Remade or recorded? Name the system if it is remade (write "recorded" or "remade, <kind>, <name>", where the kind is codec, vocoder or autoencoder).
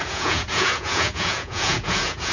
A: remade, vocoder, Vocos